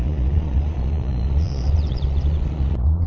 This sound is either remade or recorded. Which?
remade